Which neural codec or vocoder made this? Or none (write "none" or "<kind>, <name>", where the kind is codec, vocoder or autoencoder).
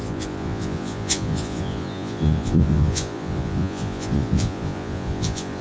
vocoder, Vocos